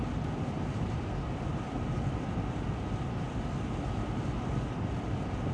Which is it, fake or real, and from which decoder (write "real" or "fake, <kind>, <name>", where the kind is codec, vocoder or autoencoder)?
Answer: real